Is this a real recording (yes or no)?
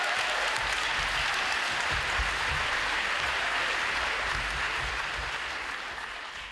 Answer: yes